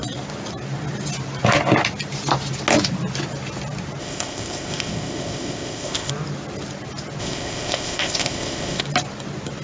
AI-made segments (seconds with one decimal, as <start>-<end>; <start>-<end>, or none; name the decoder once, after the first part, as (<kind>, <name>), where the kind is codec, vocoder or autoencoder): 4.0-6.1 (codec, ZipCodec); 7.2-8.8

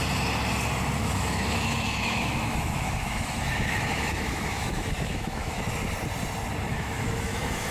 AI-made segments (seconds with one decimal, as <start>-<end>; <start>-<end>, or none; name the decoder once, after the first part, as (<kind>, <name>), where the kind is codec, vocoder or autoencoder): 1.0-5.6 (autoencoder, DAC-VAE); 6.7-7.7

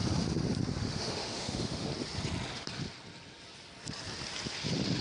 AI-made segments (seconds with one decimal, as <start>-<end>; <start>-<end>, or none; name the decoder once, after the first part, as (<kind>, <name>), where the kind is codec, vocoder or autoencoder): 0.8-1.9 (autoencoder, DAC-VAE)

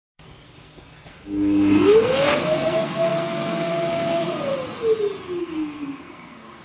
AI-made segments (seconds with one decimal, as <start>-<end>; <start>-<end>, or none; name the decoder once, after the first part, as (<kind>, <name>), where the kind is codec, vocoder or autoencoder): 0.0-4.5 (codec, SNAC); 5.4-6.6

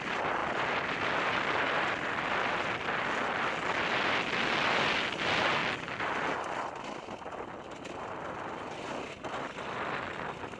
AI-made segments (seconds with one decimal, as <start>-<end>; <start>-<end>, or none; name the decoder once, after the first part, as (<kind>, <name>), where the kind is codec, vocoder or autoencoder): none

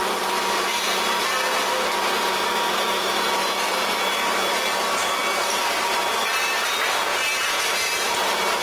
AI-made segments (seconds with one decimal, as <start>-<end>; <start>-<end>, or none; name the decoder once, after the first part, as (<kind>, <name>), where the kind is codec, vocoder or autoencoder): 7.1-7.6 (vocoder, Vocos)

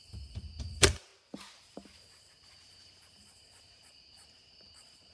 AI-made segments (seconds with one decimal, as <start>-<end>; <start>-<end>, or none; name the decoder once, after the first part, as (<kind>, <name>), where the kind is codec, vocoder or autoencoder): 0.0-1.1 (vocoder, BigVGAN v2); 2.2-5.1

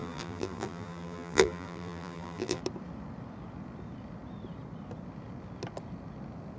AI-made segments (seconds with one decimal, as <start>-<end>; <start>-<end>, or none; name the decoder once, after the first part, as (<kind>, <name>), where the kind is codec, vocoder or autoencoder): 0.0-2.6 (vocoder, BigVGAN v2)